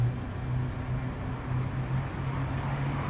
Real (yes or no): yes